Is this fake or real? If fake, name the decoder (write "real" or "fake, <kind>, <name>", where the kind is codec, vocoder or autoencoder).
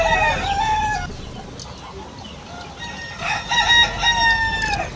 real